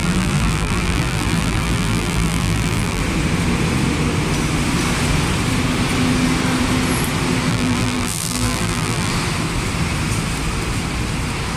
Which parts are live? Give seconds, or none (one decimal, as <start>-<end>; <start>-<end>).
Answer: 3.0-7.5; 9.1-11.6